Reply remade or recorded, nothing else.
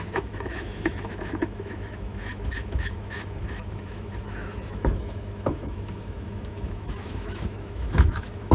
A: remade